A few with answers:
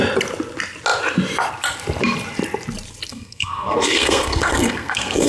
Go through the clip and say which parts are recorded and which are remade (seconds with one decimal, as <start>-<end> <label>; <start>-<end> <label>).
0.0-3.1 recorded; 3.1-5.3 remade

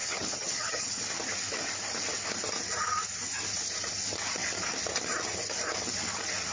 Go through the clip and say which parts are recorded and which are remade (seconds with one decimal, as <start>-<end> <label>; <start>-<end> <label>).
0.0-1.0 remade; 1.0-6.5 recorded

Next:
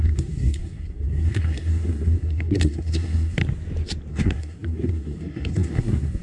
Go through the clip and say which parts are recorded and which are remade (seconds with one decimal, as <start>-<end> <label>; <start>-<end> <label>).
0.0-3.4 remade; 3.4-4.1 recorded; 4.1-6.2 remade

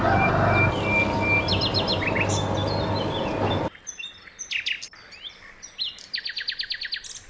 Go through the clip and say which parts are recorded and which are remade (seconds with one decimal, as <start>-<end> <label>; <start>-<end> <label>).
0.0-7.3 recorded

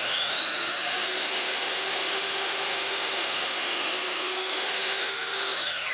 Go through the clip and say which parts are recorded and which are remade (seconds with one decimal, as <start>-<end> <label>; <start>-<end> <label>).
0.0-5.9 remade

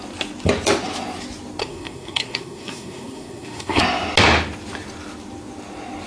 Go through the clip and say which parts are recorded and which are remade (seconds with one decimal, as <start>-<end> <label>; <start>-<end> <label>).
0.0-1.6 recorded; 1.6-3.8 remade; 3.8-6.1 recorded

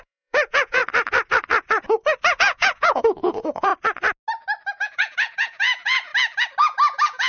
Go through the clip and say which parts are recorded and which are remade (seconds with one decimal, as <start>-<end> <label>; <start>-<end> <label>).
0.0-0.8 remade; 0.8-2.4 recorded; 2.4-3.7 remade; 3.7-4.8 recorded; 4.8-6.1 remade; 6.1-6.6 recorded; 6.6-7.3 remade

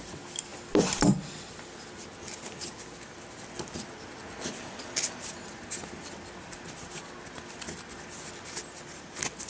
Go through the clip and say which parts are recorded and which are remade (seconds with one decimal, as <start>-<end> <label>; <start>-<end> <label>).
0.0-9.5 recorded